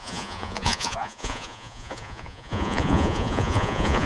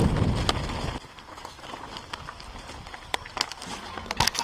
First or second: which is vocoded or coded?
first